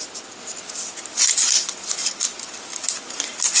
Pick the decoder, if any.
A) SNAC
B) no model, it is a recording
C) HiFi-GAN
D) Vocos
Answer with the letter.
B